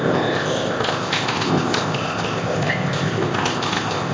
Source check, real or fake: fake